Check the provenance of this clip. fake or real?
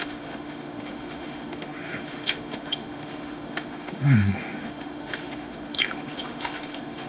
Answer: fake